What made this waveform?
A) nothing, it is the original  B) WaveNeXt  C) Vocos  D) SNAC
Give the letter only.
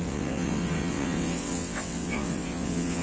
B